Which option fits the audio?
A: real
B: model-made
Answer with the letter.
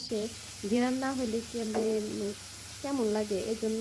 B